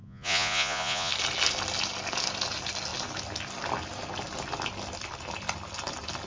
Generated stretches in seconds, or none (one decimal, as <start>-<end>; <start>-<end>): 0.0-1.1

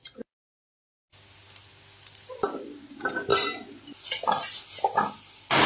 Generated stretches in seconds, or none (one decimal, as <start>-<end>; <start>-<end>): none

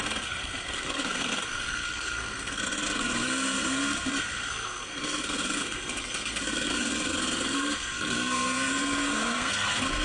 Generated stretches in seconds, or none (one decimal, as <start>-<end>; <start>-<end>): 0.0-10.0

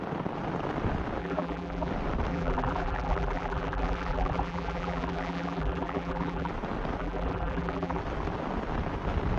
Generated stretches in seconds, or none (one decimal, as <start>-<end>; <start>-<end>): 1.2-1.9; 2.3-6.5; 7.0-8.0

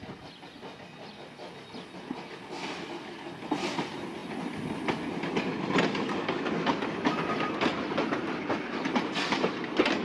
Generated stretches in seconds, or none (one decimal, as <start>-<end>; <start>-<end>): none

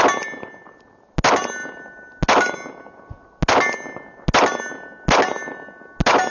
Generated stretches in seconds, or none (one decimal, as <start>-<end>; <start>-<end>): none

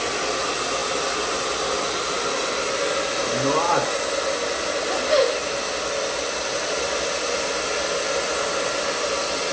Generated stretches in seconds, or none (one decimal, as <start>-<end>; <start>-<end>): none

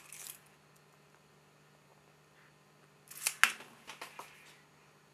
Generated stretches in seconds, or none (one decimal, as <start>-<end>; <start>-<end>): none